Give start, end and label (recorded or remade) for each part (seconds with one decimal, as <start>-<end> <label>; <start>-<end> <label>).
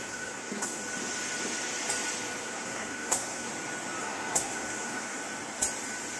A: 0.0-0.8 remade; 0.8-2.4 recorded; 2.4-3.5 remade; 3.5-4.0 recorded; 4.0-5.2 remade; 5.2-6.2 recorded